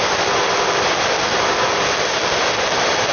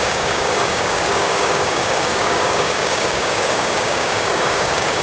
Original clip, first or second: first